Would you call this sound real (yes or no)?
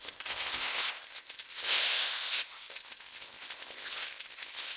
no